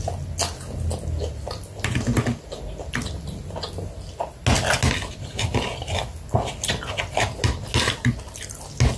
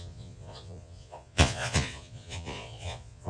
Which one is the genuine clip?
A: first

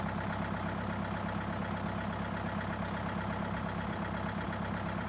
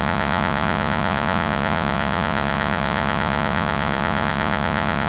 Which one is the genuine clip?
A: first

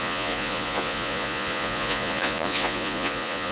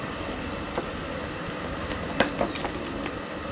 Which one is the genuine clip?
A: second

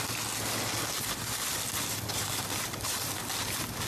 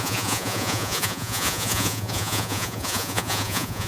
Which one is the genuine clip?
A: first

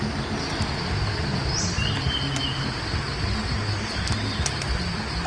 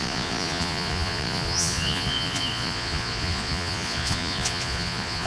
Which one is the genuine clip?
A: first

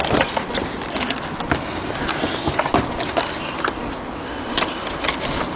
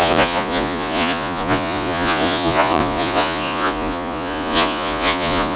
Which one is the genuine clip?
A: first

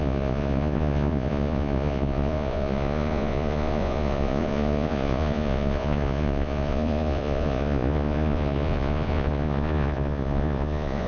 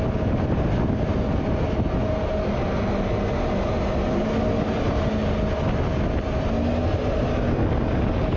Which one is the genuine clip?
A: second